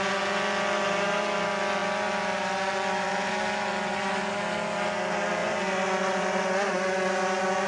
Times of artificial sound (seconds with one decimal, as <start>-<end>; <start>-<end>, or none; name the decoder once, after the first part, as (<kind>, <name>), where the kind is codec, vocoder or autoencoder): 5.4-7.1 (vocoder, Vocos)